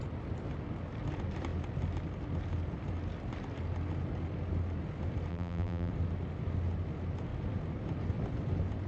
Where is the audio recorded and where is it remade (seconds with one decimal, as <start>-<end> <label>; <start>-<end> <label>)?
0.0-5.3 recorded; 5.3-5.9 remade; 5.9-8.9 recorded